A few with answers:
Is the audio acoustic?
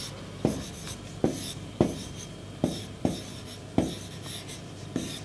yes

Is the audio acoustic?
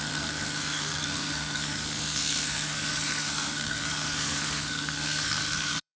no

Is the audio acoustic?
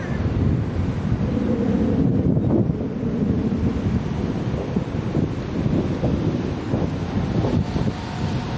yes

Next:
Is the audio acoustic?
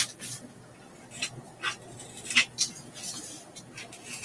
yes